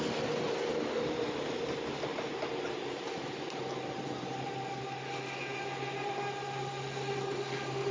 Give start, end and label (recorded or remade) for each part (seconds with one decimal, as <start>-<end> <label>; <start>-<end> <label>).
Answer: 0.0-0.7 recorded; 0.7-1.2 remade; 1.2-2.1 recorded; 2.1-4.5 remade; 4.5-7.9 recorded